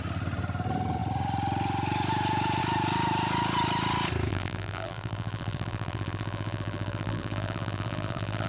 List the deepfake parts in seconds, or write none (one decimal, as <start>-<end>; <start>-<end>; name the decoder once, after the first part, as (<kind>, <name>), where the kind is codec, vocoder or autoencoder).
4.3-8.5 (vocoder, BigVGAN v2)